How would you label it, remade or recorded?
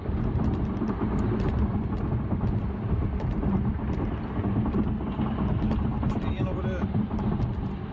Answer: recorded